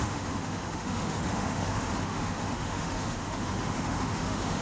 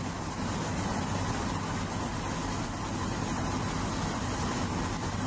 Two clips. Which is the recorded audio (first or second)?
second